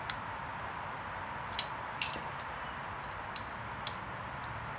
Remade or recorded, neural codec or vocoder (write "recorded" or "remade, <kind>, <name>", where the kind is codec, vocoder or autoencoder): recorded